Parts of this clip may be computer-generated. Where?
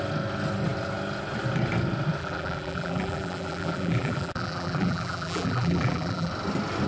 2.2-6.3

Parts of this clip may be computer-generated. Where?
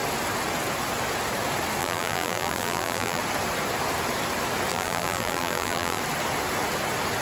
1.8-3.2; 4.7-6.0